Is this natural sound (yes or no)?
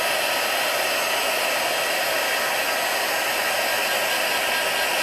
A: yes